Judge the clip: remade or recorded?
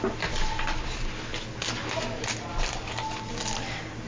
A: recorded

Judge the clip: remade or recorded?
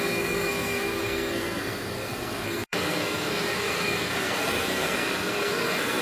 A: remade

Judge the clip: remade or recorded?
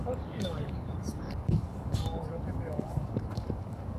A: remade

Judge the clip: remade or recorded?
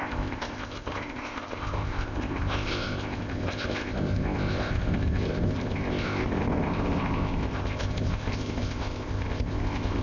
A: remade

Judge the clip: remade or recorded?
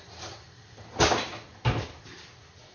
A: recorded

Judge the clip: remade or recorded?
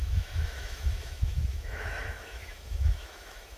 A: remade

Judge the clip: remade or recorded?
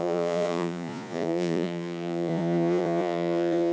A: remade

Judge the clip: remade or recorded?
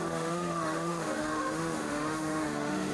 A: remade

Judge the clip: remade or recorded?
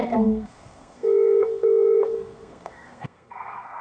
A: remade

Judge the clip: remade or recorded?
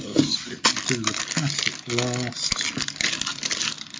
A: recorded